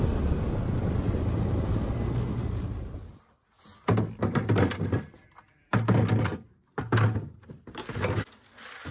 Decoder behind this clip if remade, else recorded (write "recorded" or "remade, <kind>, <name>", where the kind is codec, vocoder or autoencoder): recorded